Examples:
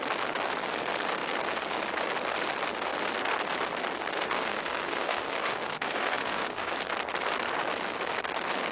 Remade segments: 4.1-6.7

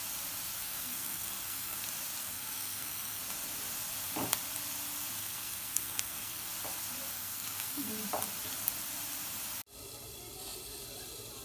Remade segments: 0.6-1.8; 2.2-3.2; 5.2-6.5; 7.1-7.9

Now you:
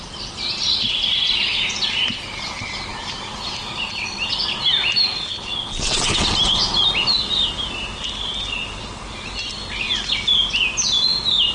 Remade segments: none